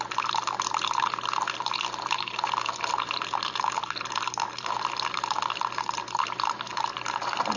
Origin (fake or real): real